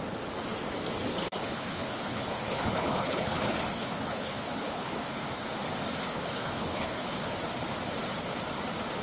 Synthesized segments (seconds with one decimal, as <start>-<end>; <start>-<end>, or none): 1.1-5.3; 6.0-7.4